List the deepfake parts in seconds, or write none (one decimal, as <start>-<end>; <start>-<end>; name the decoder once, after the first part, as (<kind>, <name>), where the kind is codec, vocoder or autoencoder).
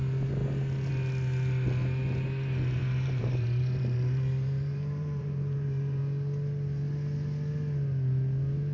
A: 2.8-6.0 (vocoder, BigVGAN v2)